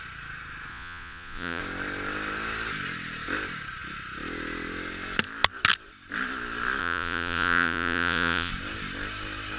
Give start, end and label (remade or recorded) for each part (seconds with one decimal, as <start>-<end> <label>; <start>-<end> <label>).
0.0-0.7 recorded; 0.7-1.6 remade; 1.6-6.8 recorded; 6.8-8.5 remade; 8.5-9.6 recorded